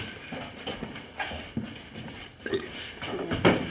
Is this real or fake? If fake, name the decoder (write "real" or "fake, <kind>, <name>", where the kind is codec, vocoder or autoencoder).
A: real